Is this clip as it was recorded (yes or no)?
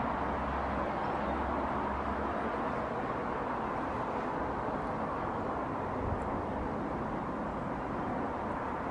yes